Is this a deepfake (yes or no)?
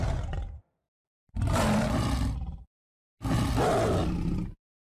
no